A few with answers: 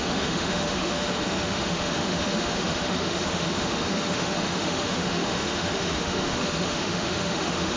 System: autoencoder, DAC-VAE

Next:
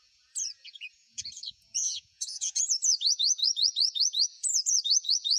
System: vocoder, Vocos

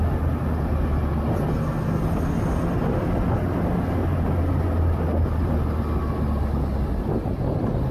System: none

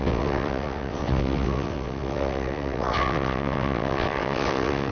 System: vocoder, WaveNeXt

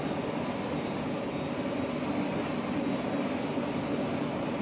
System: none